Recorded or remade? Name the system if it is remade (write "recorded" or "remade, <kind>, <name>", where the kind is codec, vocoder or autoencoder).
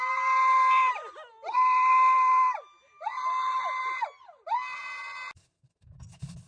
recorded